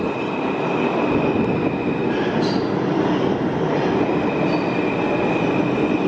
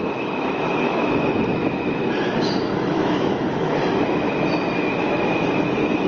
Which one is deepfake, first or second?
second